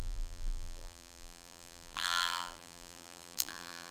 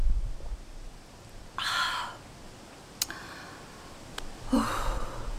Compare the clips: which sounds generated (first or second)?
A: first